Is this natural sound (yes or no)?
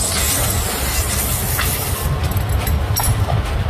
yes